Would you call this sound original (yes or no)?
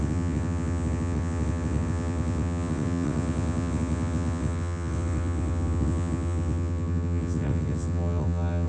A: no